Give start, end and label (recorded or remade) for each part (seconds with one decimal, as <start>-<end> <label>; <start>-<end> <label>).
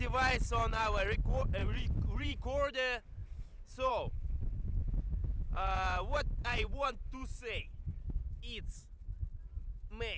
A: 0.0-1.6 recorded; 1.6-2.4 remade; 2.4-4.8 recorded; 4.8-7.7 remade; 7.7-10.2 recorded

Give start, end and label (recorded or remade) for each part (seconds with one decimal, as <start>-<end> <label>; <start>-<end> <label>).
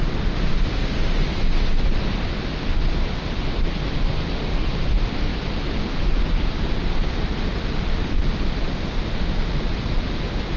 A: 0.0-10.6 recorded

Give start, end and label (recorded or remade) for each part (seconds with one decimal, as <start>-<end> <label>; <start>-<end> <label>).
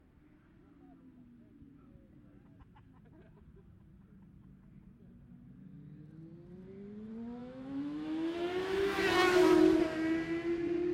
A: 0.0-7.4 recorded; 7.4-9.6 remade; 9.6-10.9 recorded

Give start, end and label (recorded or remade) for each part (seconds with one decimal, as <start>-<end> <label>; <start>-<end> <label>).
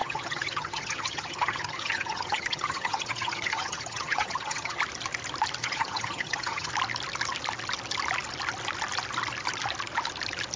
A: 0.0-4.8 remade; 4.8-5.6 recorded; 5.6-6.7 remade; 6.7-10.6 recorded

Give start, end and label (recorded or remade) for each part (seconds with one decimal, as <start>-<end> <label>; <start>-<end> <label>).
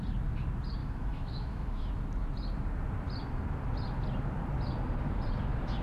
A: 0.0-0.8 recorded; 0.8-1.9 remade; 1.9-5.8 recorded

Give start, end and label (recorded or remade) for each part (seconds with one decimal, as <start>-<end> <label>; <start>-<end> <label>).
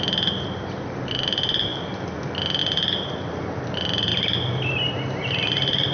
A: 0.0-1.7 recorded; 1.7-2.2 remade; 2.2-2.6 recorded; 2.6-3.2 remade; 3.2-5.9 recorded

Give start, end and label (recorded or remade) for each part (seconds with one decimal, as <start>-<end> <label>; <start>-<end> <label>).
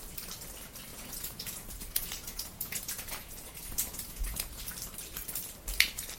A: 0.0-0.9 recorded; 0.9-4.6 remade; 4.6-6.2 recorded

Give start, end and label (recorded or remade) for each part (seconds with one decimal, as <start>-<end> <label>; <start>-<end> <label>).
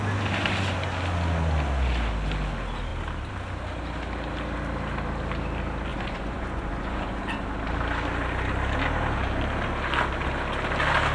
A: 0.0-5.9 recorded; 5.9-7.2 remade; 7.2-11.1 recorded